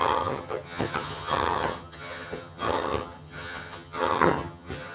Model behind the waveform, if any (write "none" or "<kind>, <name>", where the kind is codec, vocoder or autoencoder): vocoder, HiFi-GAN